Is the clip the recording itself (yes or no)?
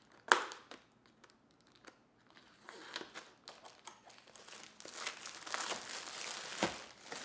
yes